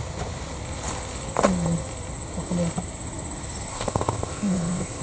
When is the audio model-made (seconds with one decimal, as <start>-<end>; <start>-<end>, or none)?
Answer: 3.7-5.0